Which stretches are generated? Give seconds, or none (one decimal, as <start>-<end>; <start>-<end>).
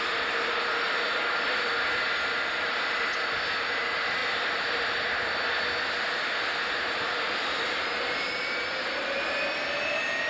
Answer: none